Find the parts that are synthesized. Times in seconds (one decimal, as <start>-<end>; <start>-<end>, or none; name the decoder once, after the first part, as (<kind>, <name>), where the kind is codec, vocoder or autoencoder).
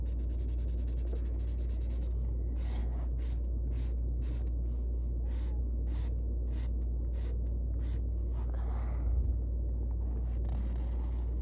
none